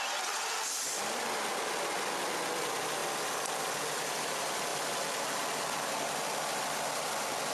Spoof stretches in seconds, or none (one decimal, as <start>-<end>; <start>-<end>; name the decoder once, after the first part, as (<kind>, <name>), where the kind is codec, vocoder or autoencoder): 4.7-5.4 (vocoder, BigVGAN v2)

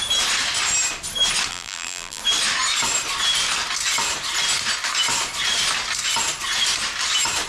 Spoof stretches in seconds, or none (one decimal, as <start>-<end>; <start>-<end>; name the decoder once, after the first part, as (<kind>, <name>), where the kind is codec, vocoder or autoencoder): 1.5-2.2 (vocoder, BigVGAN v2)

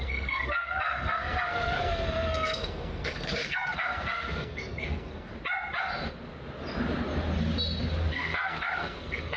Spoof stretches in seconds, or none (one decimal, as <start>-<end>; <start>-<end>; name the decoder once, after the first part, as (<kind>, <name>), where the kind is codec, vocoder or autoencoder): 0.0-5.3 (codec, SNAC); 8.1-9.4

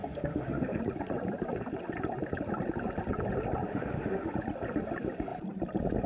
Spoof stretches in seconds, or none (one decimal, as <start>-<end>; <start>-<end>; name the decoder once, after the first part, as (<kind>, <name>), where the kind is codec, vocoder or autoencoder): 0.0-0.8 (autoencoder, DAC-VAE); 3.7-4.3

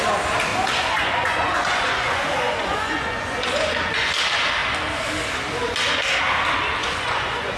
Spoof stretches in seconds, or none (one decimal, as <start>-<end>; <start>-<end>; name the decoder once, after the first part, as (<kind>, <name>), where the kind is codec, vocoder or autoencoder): 0.5-4.1 (vocoder, Vocos); 6.8-7.6

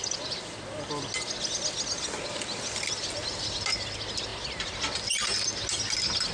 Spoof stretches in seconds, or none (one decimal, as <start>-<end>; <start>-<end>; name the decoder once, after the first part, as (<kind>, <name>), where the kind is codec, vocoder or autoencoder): none